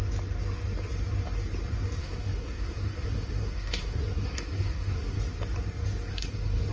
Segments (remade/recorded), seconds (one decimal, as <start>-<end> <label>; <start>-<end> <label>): 0.0-2.0 recorded; 2.0-5.2 remade; 5.2-6.1 recorded; 6.1-6.7 remade